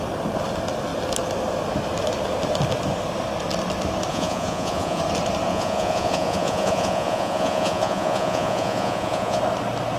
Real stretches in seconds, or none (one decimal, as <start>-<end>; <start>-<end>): 0.0-4.1; 5.0-5.5; 9.4-10.0